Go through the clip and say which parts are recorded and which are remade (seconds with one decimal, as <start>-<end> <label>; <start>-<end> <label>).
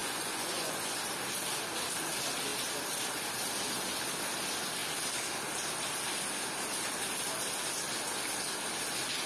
0.0-1.0 remade; 1.0-9.3 recorded